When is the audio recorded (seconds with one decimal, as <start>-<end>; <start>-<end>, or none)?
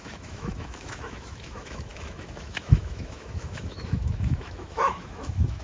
none